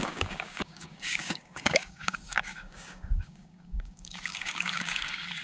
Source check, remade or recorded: remade